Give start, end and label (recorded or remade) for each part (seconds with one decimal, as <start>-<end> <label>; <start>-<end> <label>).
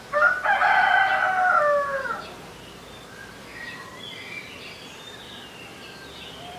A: 0.0-6.6 recorded